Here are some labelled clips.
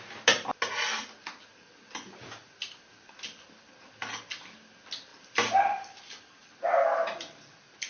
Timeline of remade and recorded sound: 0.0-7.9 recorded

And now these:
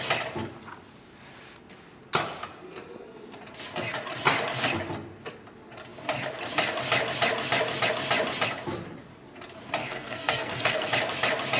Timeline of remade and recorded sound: 0.0-9.8 recorded; 9.8-10.9 remade; 10.9-11.6 recorded

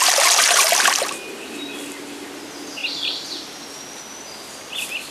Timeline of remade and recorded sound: 0.0-5.1 recorded

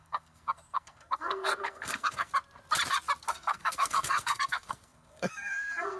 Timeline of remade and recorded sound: 0.0-2.3 remade; 2.3-3.3 recorded; 3.3-6.0 remade

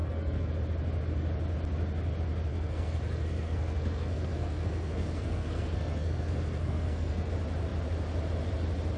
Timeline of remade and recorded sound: 0.0-0.5 remade; 0.5-2.5 recorded; 2.5-7.3 remade; 7.3-9.0 recorded